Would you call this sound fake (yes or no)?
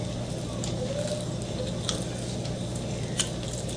no